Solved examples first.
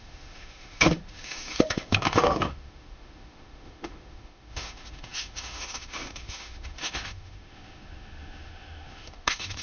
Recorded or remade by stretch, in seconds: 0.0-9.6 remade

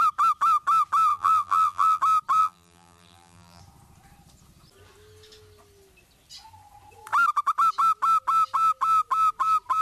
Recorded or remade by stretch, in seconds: 0.0-1.1 recorded; 1.1-2.0 remade; 2.0-2.4 recorded; 2.4-3.6 remade; 3.6-9.8 recorded

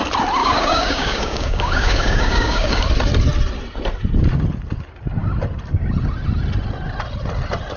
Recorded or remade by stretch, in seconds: 0.0-0.4 recorded; 0.4-2.8 remade; 2.8-7.8 recorded

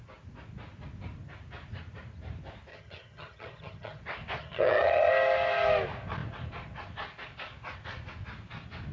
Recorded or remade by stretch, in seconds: 0.0-2.7 recorded; 2.7-4.0 remade; 4.0-4.4 recorded; 4.4-5.1 remade; 5.1-8.9 recorded